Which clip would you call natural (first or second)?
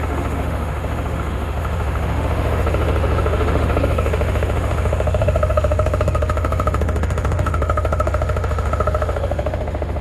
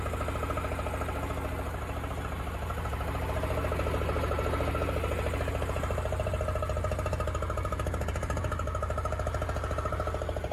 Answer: second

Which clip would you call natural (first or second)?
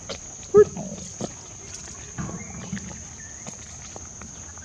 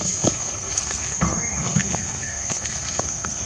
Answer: first